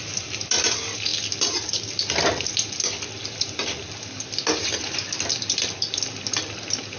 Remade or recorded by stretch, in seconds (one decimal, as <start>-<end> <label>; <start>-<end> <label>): 0.0-7.0 recorded